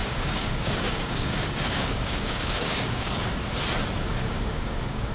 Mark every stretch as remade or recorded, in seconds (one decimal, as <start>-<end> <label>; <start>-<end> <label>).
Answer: 0.0-3.1 remade; 3.1-4.1 recorded; 4.1-5.1 remade